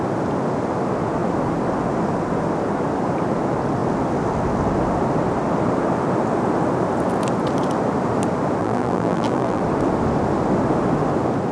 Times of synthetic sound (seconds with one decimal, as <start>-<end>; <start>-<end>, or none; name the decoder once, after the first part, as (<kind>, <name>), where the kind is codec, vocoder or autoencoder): 8.6-9.6 (vocoder, BigVGAN v2)